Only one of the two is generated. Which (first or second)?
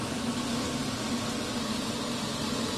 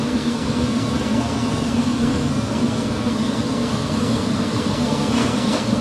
second